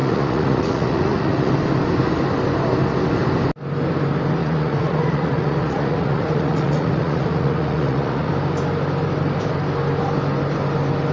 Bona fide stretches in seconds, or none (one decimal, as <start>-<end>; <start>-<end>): 1.5-4.4; 8.3-11.1